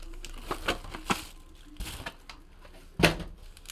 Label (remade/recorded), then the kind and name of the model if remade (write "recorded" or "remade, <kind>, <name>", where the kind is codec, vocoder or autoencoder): recorded